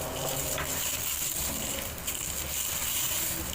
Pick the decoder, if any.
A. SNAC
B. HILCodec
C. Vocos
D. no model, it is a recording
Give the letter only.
D